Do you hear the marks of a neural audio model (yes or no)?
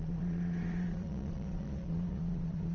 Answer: yes